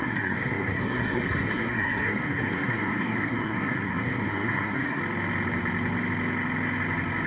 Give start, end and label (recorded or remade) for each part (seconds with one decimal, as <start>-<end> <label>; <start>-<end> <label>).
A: 0.0-5.0 remade; 5.0-7.3 recorded